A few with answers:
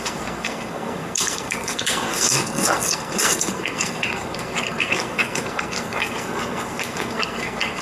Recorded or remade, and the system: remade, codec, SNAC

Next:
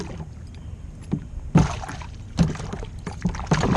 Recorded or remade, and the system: recorded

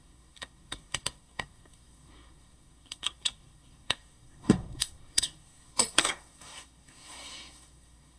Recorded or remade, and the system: remade, codec, SNAC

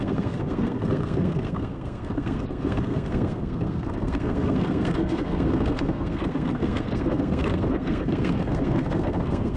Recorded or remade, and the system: remade, codec, SNAC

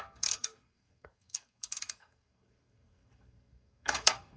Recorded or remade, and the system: remade, codec, SNAC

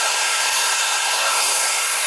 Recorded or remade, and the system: remade, codec, SNAC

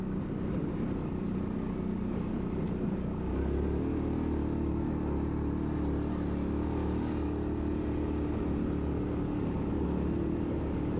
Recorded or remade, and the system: recorded